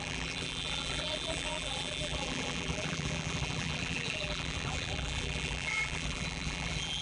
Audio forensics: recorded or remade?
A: remade